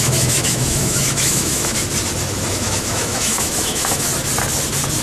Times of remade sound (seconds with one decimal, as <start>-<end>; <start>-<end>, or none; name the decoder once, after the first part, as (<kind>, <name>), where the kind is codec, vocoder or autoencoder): 0.0-1.8 (autoencoder, DAC-VAE); 2.5-4.1